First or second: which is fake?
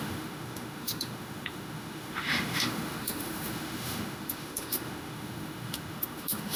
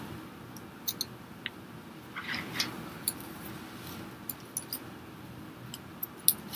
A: first